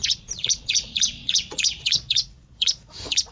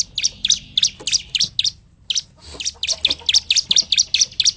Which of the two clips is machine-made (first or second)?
first